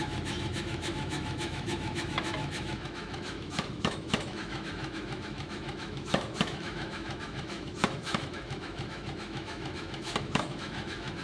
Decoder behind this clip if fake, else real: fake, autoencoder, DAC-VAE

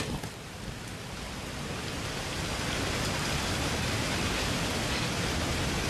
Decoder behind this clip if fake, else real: real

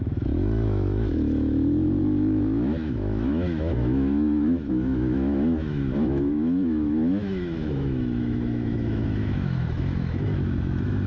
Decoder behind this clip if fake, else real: fake, autoencoder, DAC-VAE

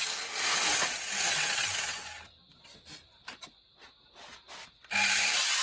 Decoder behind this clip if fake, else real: real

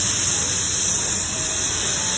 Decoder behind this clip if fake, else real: real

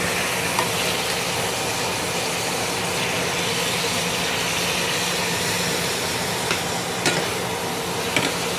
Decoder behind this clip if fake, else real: real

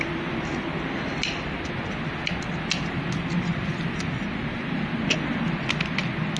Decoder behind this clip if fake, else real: real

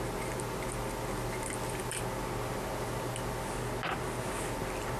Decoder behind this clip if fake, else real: real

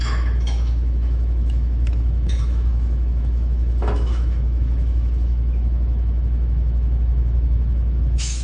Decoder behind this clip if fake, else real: fake, autoencoder, DAC-VAE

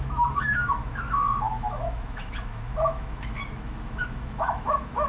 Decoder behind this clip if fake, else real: fake, autoencoder, DAC-VAE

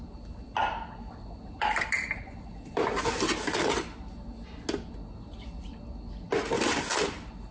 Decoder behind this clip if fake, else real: real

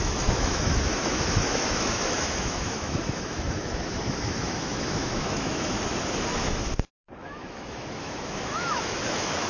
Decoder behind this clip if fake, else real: fake, autoencoder, DAC-VAE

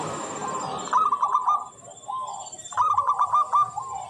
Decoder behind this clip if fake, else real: real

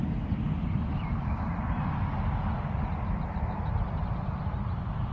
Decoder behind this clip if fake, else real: real